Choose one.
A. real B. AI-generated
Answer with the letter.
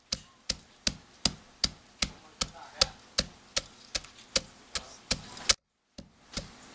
A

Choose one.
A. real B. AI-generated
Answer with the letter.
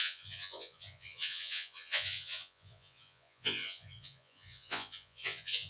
B